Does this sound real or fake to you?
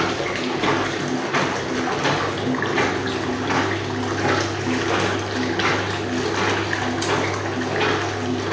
real